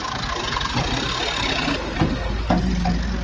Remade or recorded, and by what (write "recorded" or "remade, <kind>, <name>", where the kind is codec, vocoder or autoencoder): recorded